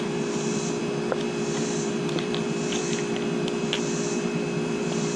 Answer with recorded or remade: remade